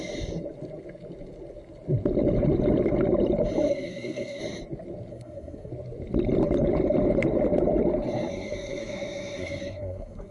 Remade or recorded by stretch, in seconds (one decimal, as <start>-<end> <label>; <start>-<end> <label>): 0.0-3.7 recorded; 3.7-4.4 remade; 4.4-5.1 recorded; 5.1-5.7 remade; 5.7-8.3 recorded; 8.3-10.3 remade